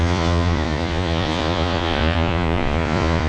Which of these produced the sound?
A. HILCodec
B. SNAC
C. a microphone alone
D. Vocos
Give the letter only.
D